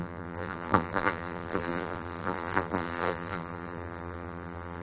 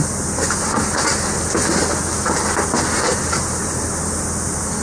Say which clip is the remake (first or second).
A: first